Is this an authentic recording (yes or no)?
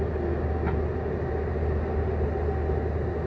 yes